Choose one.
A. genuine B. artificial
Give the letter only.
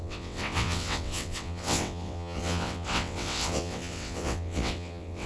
B